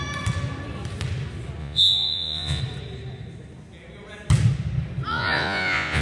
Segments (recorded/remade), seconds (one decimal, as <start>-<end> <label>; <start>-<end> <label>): 0.0-1.6 recorded; 1.6-2.6 remade; 2.6-5.1 recorded; 5.1-6.0 remade